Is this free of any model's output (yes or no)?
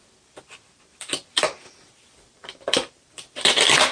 no